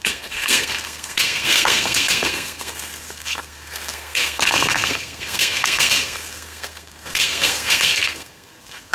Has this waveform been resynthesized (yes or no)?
yes